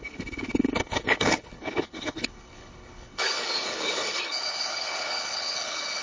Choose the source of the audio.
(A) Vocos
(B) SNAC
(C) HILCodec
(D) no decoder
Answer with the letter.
C